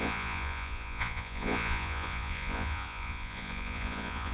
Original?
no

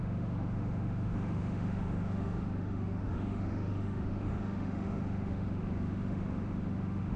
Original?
no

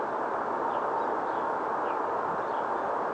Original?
yes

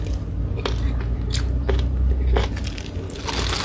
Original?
yes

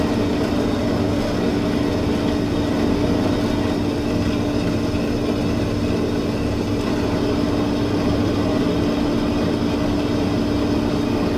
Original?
yes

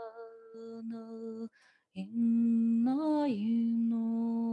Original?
yes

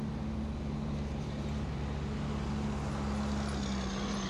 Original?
yes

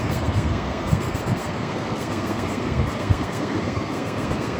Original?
no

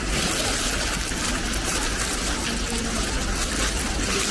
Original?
yes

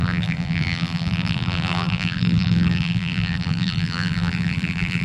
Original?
no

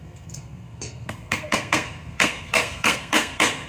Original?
no